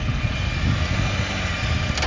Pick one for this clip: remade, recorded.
recorded